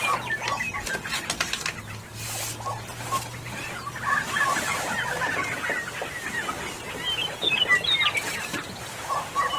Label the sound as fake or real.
real